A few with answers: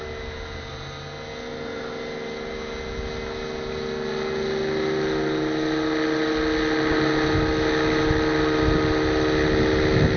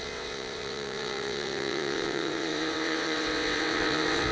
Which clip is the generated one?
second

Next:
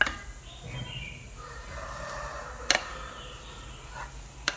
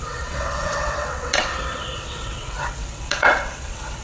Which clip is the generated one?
second